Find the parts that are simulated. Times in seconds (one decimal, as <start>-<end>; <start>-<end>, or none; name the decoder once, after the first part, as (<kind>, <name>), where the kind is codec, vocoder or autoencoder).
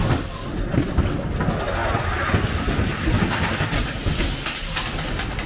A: none